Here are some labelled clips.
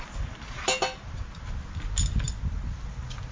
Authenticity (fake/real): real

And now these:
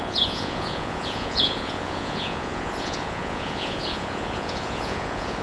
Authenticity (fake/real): fake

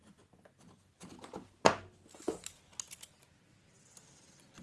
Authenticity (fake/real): real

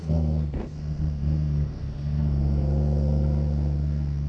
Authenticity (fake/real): fake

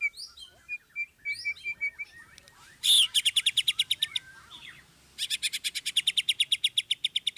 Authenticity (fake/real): real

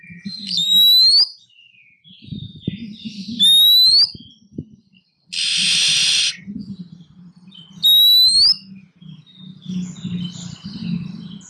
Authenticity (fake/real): real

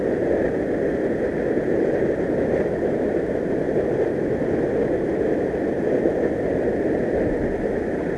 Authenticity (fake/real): real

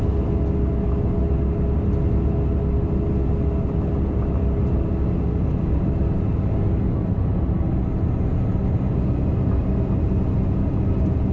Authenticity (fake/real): real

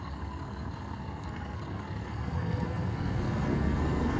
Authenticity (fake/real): fake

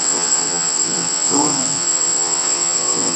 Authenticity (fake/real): fake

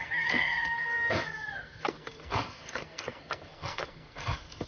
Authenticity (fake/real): fake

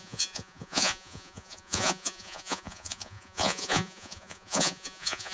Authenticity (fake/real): fake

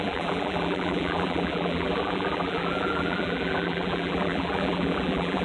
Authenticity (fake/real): fake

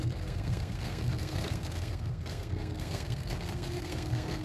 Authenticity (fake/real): fake